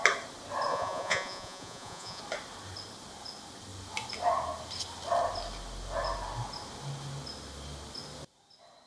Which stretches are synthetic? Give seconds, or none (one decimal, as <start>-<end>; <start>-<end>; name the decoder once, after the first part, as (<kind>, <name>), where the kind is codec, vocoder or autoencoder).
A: 0.7-2.2 (vocoder, Vocos)